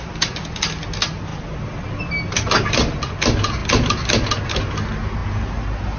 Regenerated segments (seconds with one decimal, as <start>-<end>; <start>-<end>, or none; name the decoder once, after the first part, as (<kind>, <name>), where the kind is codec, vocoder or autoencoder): none